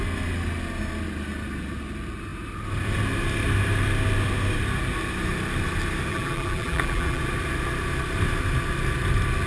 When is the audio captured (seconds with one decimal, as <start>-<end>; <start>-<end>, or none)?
0.0-6.1; 7.2-9.5